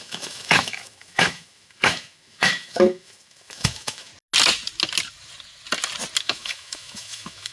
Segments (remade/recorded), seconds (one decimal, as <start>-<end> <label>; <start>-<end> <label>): 0.0-4.1 remade; 4.1-6.2 recorded; 6.2-7.5 remade